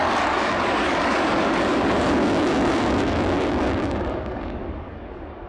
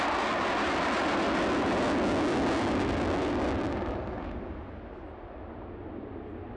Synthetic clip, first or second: first